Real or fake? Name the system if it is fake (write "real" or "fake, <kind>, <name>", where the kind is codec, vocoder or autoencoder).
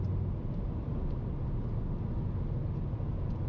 real